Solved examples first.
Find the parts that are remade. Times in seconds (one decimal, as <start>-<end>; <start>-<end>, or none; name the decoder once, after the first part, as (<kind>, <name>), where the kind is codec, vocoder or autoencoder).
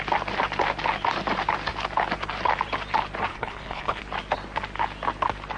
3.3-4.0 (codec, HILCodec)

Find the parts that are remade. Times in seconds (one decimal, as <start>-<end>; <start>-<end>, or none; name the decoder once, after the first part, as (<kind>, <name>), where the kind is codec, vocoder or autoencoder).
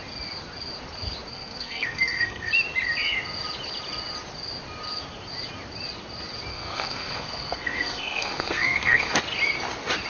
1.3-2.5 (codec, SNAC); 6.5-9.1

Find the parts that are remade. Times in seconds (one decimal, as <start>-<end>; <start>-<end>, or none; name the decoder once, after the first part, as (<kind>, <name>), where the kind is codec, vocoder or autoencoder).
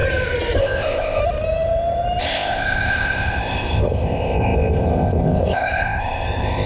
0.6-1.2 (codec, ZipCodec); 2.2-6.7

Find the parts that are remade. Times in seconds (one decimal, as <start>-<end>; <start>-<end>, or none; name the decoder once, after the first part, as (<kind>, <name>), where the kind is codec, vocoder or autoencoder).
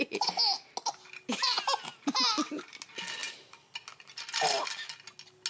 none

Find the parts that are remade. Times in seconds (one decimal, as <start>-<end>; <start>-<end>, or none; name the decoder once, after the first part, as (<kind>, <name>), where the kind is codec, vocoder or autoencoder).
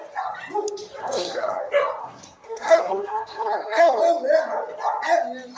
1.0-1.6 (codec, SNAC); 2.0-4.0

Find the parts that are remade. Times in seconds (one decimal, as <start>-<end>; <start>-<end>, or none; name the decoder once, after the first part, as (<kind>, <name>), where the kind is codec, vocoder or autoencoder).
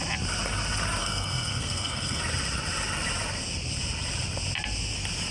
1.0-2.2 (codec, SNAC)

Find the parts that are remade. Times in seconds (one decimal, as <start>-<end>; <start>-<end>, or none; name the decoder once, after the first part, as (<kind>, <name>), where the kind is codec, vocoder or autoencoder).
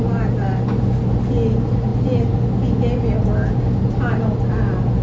none